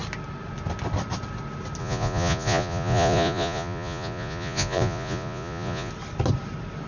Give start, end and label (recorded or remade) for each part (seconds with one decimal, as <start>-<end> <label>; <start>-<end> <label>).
0.0-1.8 recorded; 1.8-5.9 remade; 5.9-6.9 recorded